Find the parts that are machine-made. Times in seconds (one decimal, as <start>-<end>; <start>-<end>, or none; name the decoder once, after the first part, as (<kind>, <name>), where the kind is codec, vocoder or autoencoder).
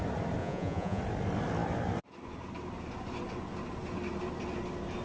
0.4-1.0 (vocoder, Vocos)